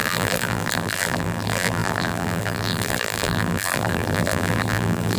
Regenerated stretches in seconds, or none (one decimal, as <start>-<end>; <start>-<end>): 0.0-5.2